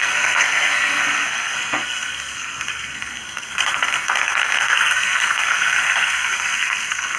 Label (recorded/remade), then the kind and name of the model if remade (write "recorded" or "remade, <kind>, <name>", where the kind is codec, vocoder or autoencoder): remade, codec, SNAC